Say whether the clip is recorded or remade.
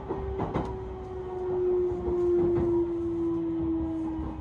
recorded